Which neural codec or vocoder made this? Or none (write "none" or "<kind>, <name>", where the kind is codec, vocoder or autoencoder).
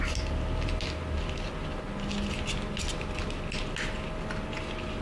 none